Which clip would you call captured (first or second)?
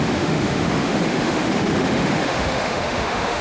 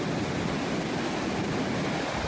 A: second